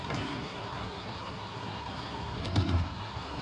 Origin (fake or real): fake